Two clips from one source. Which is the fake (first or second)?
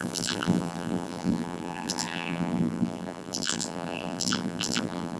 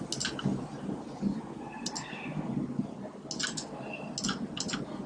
first